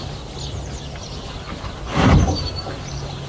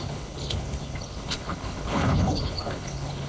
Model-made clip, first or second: second